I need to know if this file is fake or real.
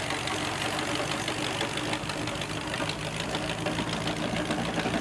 real